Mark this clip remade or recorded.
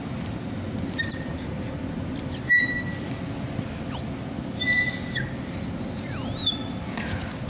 recorded